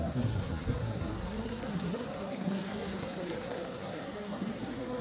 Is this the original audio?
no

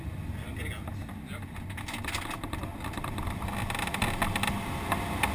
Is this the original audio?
yes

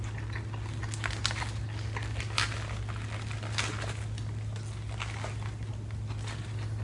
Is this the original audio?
yes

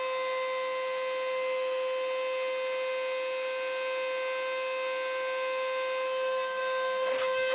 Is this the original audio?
yes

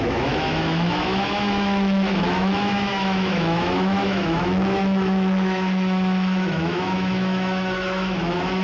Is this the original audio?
no